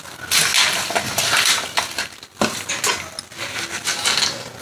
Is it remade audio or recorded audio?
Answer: recorded